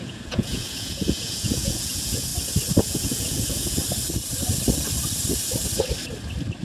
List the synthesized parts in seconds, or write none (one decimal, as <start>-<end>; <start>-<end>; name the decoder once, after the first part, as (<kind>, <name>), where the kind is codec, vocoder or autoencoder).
0.0-2.3 (vocoder, Vocos); 2.8-3.8